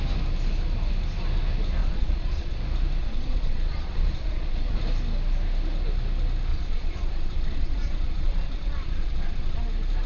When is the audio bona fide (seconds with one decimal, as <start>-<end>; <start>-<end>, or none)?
0.0-1.8; 2.6-3.0; 4.8-6.5; 9.6-10.1